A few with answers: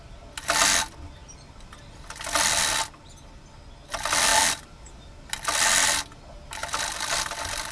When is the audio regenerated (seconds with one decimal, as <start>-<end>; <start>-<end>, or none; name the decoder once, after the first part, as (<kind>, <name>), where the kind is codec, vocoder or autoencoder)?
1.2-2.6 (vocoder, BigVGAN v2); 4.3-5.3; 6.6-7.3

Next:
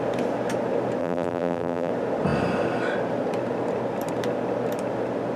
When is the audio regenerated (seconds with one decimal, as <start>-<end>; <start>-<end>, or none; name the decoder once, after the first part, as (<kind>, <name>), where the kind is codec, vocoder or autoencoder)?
1.0-1.9 (vocoder, BigVGAN v2)

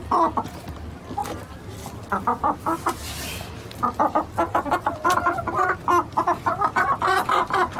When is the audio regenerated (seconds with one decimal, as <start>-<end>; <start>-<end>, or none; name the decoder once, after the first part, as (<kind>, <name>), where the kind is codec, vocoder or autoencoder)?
none

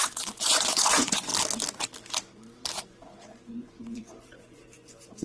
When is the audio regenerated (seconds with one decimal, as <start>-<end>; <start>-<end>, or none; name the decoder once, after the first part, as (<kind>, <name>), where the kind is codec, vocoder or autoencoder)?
0.0-1.3 (vocoder, Vocos); 2.8-5.2

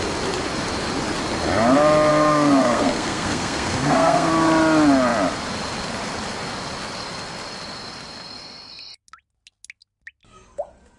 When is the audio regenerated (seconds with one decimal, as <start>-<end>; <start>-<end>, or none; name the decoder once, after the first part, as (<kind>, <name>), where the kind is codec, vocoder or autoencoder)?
2.1-4.3 (codec, SNAC)